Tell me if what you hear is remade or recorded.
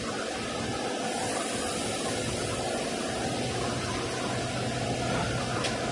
recorded